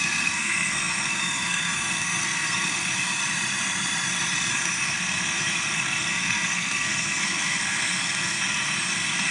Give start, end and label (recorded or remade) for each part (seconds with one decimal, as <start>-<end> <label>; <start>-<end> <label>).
0.0-3.2 remade; 3.2-4.5 recorded; 4.5-9.3 remade